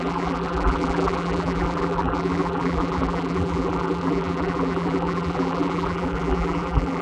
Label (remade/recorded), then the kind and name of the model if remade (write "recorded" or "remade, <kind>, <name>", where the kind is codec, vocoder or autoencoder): remade, vocoder, BigVGAN v2